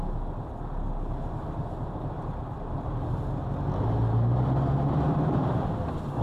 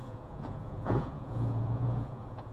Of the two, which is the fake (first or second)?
second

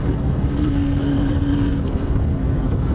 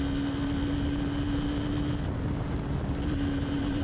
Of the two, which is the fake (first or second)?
first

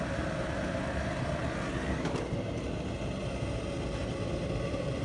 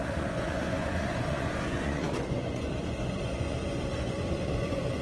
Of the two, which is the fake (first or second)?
second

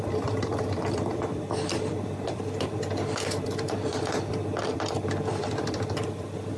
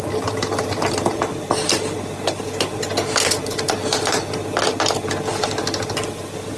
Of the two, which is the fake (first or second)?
first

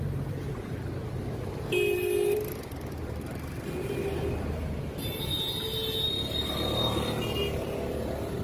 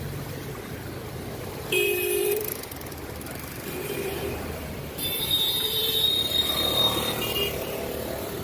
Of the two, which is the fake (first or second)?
second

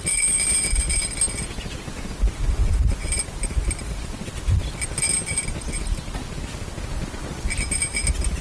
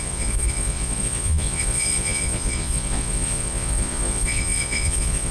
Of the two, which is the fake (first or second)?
second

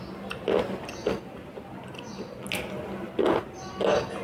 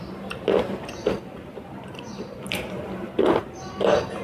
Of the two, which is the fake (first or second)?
second